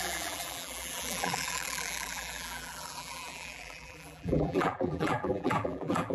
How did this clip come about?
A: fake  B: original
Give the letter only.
A